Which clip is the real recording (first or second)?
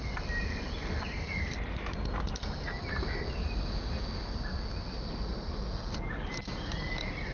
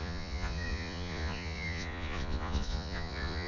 first